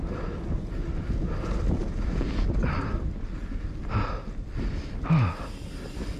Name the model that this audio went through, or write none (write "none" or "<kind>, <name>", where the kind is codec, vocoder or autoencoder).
none